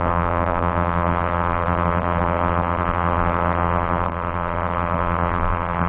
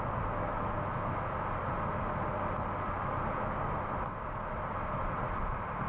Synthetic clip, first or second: first